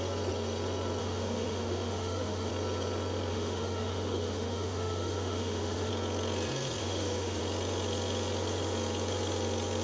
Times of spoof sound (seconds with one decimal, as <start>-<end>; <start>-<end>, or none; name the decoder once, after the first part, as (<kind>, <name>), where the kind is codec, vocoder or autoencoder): 1.0-2.5 (autoencoder, DAC-VAE); 3.3-5.9; 6.8-7.4